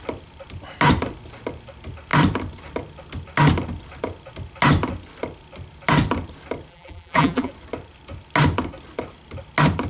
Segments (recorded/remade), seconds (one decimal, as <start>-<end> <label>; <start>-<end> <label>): 0.0-6.7 recorded; 6.7-7.5 remade; 7.5-9.9 recorded